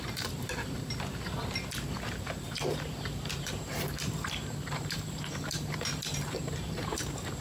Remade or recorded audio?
remade